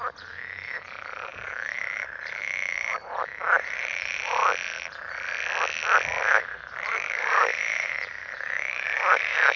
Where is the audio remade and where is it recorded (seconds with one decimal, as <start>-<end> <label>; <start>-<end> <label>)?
0.0-4.4 remade; 4.4-6.4 recorded; 6.4-7.5 remade; 7.5-8.7 recorded; 8.7-9.6 remade

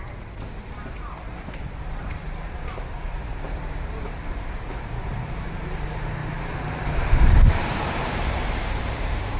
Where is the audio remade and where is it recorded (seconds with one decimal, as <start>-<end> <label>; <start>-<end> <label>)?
0.0-9.4 remade

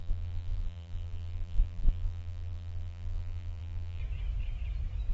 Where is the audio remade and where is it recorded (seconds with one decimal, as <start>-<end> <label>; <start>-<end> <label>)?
0.0-4.0 remade; 4.0-5.1 recorded

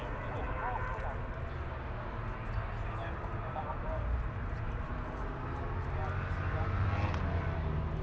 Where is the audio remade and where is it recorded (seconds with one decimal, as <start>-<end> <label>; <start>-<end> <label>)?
0.0-8.0 recorded

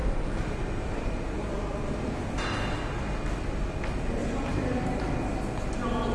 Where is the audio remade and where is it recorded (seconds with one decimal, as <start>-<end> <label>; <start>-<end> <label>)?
0.0-2.2 remade; 2.2-4.2 recorded; 4.2-5.0 remade; 5.0-6.1 recorded